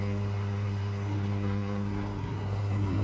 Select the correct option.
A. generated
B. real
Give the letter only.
A